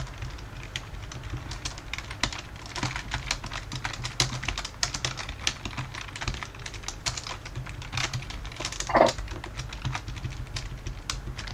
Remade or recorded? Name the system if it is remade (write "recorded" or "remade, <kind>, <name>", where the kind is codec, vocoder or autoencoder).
recorded